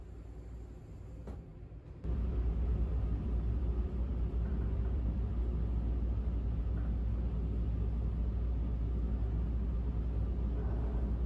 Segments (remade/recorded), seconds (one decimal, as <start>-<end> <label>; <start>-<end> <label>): 0.0-1.5 recorded; 1.5-5.3 remade; 5.3-11.3 recorded